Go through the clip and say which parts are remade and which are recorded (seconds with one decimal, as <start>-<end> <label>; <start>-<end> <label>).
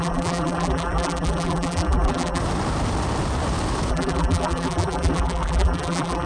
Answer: 0.0-2.4 remade; 2.4-3.9 recorded; 3.9-6.3 remade